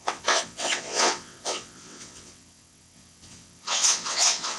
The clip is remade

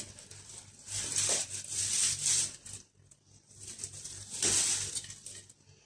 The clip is recorded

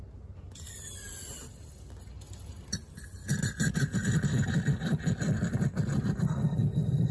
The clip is recorded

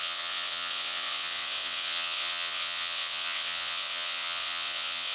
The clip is remade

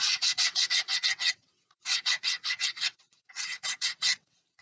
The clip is remade